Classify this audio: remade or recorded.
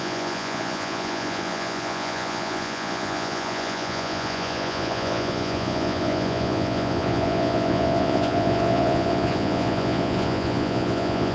remade